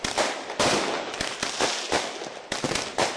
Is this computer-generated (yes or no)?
no